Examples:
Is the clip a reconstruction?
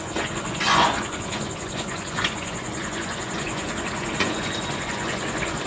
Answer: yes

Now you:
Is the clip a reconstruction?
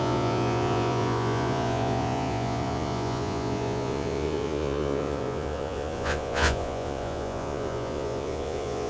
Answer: yes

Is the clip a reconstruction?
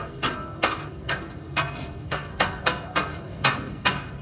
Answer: yes